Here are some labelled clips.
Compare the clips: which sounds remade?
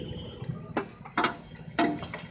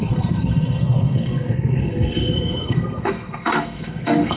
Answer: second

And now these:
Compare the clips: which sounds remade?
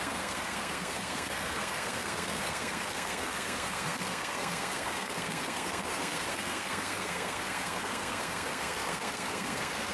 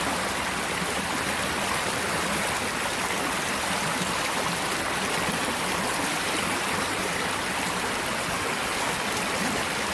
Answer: first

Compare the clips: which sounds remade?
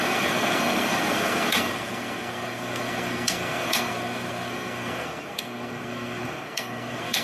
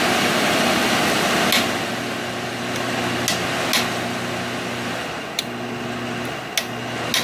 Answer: first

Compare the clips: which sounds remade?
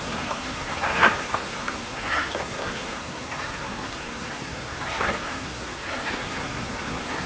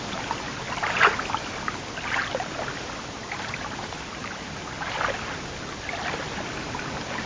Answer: first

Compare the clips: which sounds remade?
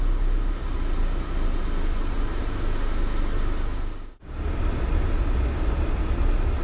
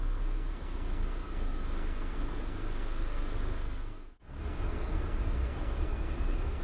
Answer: second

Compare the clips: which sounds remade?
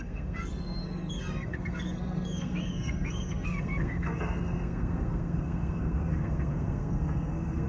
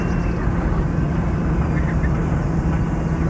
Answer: first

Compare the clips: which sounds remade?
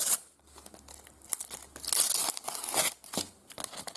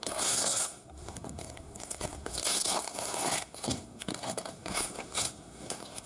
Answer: second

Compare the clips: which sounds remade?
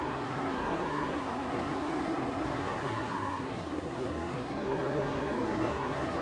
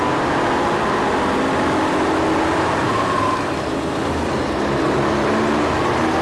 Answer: first